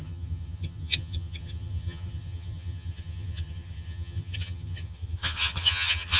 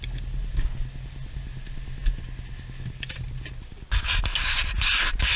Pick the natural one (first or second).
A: second